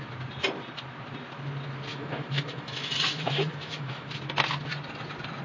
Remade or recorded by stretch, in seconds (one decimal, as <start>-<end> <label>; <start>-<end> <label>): 0.0-1.9 recorded; 1.9-4.1 remade; 4.1-5.4 recorded